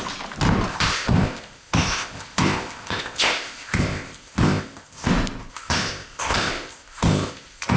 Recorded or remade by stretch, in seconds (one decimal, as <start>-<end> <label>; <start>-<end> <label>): 0.0-0.7 recorded; 0.7-5.1 remade; 5.1-5.5 recorded; 5.5-7.8 remade